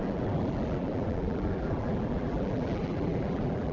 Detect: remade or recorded remade